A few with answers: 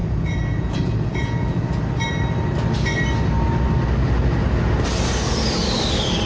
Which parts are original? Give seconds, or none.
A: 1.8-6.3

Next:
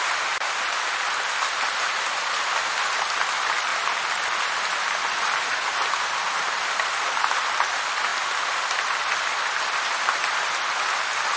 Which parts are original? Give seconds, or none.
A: 0.0-11.4

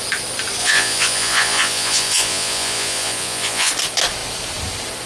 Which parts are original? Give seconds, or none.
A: 0.0-0.6; 3.7-5.1

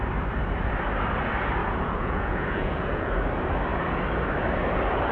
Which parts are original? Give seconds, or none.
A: 0.0-1.6; 3.1-5.1

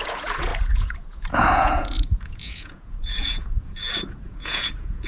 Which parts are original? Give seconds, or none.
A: none

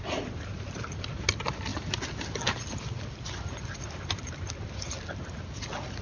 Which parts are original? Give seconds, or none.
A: 0.0-6.0